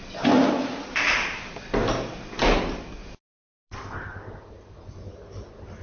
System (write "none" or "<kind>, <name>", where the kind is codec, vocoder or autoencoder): none